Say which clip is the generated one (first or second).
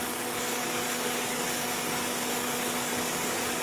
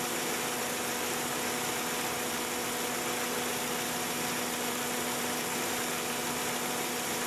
first